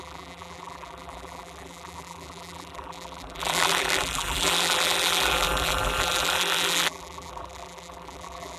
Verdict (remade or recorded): remade